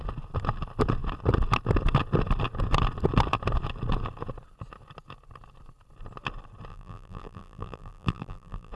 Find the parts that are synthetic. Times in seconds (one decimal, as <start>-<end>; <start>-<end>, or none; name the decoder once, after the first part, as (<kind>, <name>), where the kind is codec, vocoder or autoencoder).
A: 6.7-8.7 (vocoder, BigVGAN v2)